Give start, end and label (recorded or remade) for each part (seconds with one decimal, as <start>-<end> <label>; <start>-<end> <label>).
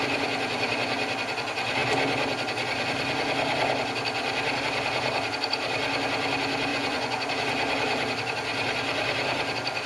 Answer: 0.0-6.7 recorded; 6.7-7.3 remade; 7.3-9.9 recorded